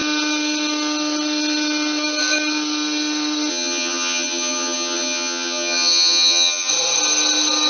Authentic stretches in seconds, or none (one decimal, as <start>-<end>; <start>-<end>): 0.0-3.5; 6.7-7.7